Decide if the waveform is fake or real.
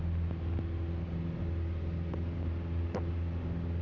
real